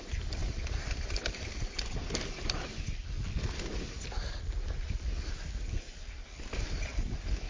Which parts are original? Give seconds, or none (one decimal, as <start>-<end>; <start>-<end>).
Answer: 0.0-7.5